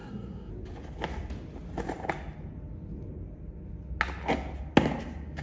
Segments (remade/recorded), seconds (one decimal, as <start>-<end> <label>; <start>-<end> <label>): 0.0-0.5 remade; 0.5-5.4 recorded

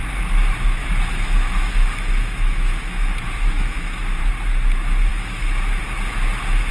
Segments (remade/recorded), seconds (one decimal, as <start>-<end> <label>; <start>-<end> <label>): 0.0-0.8 recorded; 0.8-4.2 remade; 4.2-5.1 recorded; 5.1-5.8 remade; 5.8-6.7 recorded

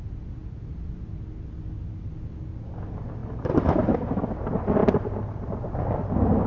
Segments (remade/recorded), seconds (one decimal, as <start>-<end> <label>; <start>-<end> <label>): 0.0-3.2 recorded; 3.2-4.2 remade; 4.2-4.8 recorded; 4.8-5.8 remade; 5.8-6.5 recorded

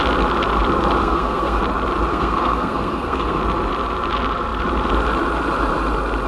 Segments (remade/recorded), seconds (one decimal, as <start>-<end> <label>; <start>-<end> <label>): 0.0-1.0 recorded; 1.0-1.6 remade; 1.6-2.1 recorded; 2.1-3.4 remade; 3.4-6.3 recorded

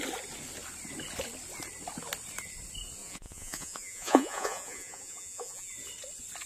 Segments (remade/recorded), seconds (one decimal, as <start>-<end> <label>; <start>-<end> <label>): 0.0-3.0 recorded; 3.0-5.7 remade; 5.7-6.5 recorded

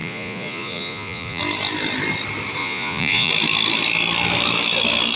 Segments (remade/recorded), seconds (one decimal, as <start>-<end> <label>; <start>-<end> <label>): 0.0-1.4 remade; 1.4-2.6 recorded; 2.6-3.3 remade; 3.3-5.2 recorded